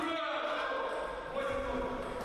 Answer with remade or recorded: recorded